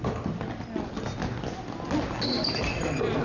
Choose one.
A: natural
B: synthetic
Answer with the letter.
A